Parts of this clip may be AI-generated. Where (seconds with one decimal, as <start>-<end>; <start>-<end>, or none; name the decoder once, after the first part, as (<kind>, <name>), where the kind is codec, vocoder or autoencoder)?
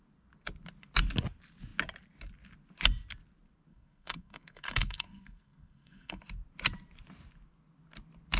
3.7-6.2 (codec, SNAC)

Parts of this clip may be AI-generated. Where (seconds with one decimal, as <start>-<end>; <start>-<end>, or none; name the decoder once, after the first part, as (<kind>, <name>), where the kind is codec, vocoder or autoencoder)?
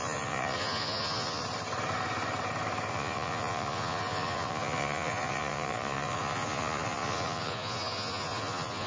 0.0-1.4 (vocoder, Vocos); 2.9-8.9